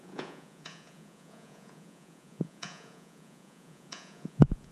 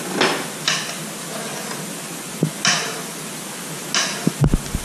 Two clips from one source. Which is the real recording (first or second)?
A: second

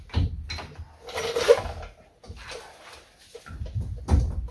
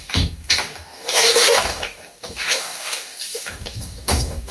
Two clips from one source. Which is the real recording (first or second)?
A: first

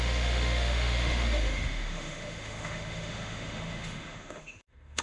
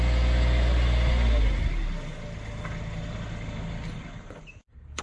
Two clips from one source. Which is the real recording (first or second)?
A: second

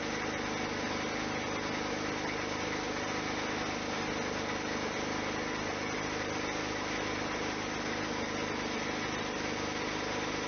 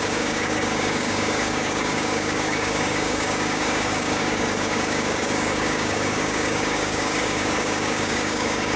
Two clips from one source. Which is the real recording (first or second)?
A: first